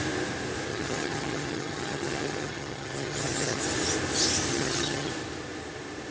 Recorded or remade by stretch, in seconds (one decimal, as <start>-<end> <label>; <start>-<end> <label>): 0.0-0.7 recorded; 0.7-3.6 remade; 3.6-4.5 recorded; 4.5-5.1 remade; 5.1-6.1 recorded